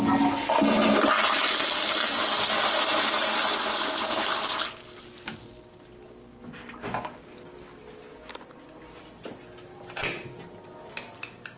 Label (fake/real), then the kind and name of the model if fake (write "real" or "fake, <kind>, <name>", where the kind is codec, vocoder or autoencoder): real